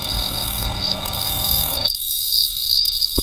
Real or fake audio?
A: fake